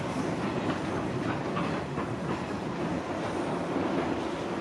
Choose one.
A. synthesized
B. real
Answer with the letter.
B